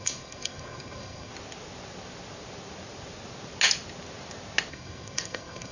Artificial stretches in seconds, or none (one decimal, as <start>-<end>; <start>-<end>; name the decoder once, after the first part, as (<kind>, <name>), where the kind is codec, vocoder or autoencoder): 0.0-1.3 (codec, SNAC); 4.7-5.7